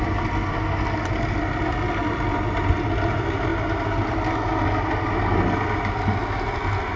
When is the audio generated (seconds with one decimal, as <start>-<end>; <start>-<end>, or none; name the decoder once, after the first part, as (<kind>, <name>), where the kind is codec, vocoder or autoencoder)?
none